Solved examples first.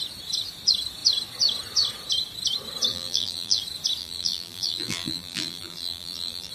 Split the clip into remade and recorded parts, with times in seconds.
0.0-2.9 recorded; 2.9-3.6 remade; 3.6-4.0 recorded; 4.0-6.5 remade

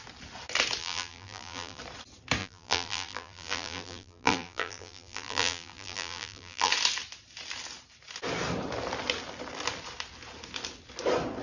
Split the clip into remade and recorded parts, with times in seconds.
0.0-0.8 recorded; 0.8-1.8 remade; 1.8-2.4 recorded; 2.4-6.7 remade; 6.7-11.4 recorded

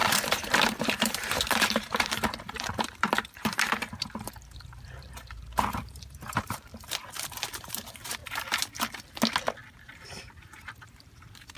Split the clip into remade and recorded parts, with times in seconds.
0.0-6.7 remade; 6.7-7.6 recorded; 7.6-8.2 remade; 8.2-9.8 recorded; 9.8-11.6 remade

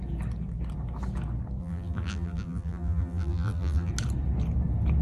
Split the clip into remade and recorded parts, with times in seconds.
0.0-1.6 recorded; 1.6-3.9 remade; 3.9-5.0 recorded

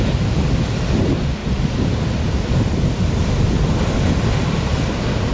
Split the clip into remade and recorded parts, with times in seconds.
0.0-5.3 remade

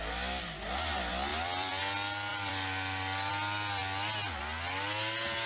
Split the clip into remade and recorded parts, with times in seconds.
0.0-1.3 recorded; 1.3-1.8 remade; 1.8-2.3 recorded; 2.3-3.3 remade; 3.3-5.5 recorded

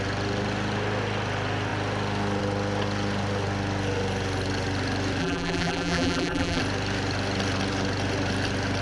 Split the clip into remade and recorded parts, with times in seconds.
0.0-5.2 recorded; 5.2-6.6 remade; 6.6-8.8 recorded